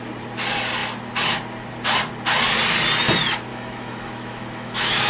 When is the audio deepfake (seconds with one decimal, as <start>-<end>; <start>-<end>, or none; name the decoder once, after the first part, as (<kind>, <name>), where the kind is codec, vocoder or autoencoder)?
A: 3.5-5.1 (autoencoder, DAC-VAE)